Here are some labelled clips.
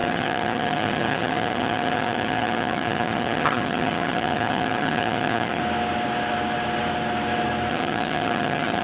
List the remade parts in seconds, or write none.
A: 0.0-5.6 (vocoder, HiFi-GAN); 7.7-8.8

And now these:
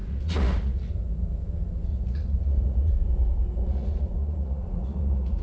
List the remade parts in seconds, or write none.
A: 0.0-0.9 (vocoder, Vocos); 1.9-2.9; 3.6-5.4